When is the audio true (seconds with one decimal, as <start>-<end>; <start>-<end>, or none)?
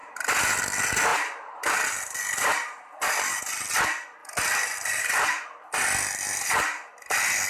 0.6-1.1; 3.4-4.2